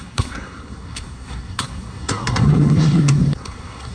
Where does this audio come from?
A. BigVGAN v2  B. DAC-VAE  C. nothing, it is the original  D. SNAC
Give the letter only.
D